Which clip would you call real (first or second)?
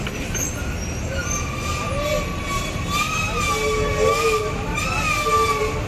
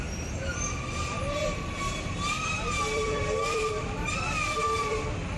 first